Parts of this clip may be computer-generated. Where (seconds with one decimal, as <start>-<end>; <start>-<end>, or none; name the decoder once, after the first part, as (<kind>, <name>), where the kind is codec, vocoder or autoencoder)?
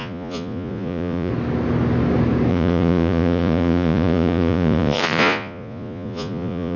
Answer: 0.0-1.3 (vocoder, Vocos); 2.5-6.8